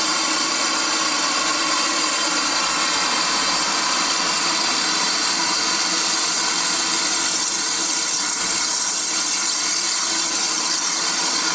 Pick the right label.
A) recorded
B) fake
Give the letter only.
A